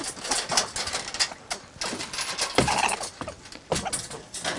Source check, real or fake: real